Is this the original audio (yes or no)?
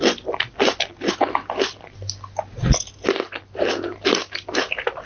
yes